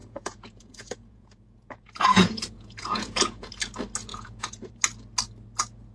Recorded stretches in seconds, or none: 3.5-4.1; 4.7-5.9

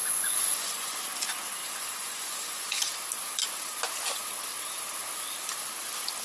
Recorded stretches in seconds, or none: 1.0-1.6; 2.9-6.2

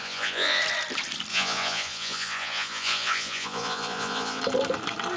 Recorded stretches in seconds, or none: 0.6-1.3; 4.4-5.2

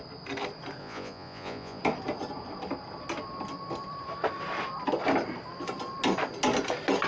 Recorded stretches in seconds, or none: 0.0-0.8; 1.8-7.1

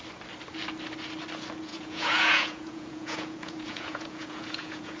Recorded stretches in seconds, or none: 0.0-1.7

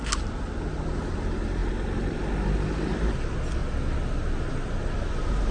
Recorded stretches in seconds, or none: 0.0-5.5